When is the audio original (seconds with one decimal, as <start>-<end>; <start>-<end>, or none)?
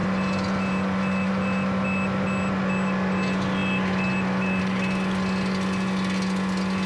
0.0-6.9